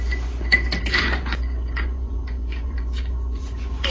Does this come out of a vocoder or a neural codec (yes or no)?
yes